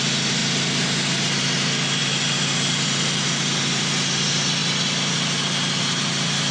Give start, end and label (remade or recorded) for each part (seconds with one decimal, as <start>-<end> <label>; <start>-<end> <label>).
0.0-6.5 recorded